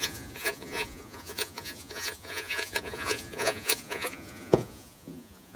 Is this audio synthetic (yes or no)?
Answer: yes